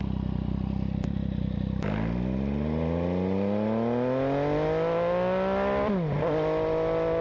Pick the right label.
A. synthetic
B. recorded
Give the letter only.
B